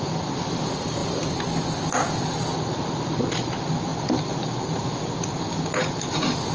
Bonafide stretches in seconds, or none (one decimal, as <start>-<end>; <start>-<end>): 0.0-6.5